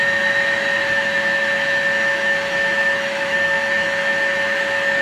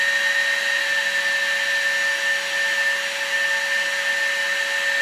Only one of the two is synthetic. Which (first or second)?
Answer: first